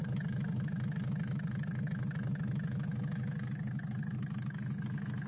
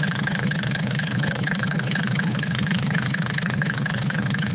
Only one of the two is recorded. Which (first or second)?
first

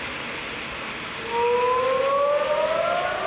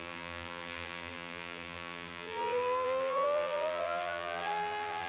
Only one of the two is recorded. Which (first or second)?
first